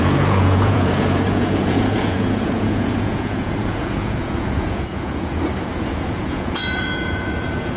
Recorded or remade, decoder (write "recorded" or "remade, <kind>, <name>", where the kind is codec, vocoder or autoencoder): remade, vocoder, Vocos